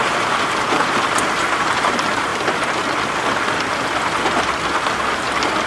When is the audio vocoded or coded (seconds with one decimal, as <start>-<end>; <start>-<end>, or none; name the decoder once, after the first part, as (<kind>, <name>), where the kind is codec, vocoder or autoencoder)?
0.0-2.3 (vocoder, BigVGAN v2)